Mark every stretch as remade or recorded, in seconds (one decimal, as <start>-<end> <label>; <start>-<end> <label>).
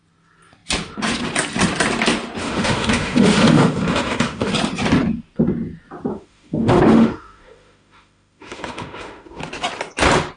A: 0.0-2.4 recorded; 2.4-4.5 remade; 4.5-6.1 recorded; 6.1-9.4 remade; 9.4-10.4 recorded